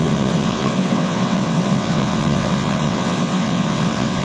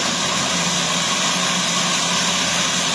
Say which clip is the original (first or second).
second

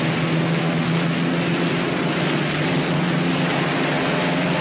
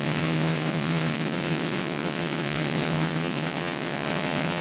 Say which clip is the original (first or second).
first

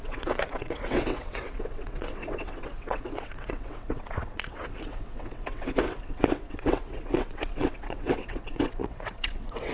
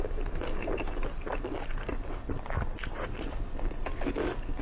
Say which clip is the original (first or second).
second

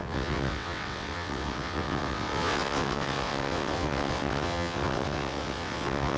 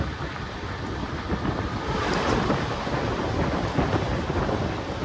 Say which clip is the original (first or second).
second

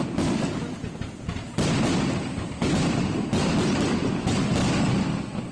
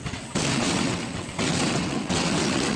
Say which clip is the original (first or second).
first